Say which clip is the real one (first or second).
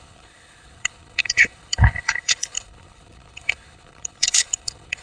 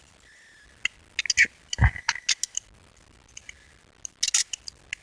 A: second